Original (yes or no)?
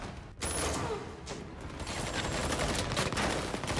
yes